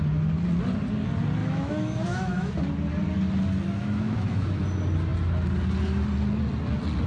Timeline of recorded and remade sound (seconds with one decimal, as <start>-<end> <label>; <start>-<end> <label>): 0.0-1.4 recorded; 1.4-2.5 remade; 2.5-3.8 recorded; 3.8-4.6 remade; 4.6-7.1 recorded